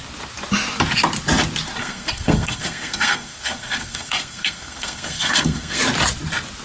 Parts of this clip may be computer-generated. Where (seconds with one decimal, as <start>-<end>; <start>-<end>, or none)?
1.8-5.8

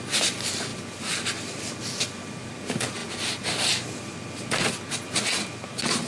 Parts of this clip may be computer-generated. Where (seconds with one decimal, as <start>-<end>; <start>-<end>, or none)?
none

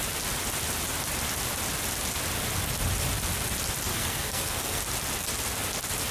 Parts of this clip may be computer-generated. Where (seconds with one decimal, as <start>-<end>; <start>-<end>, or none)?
3.9-4.8